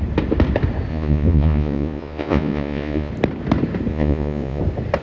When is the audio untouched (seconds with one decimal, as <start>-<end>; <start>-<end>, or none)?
0.0-0.9; 3.1-3.9; 4.6-5.0